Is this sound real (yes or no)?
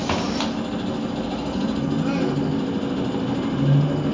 yes